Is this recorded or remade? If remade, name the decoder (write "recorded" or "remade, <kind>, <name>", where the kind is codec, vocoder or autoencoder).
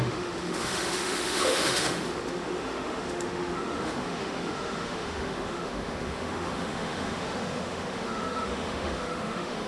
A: remade, autoencoder, DAC-VAE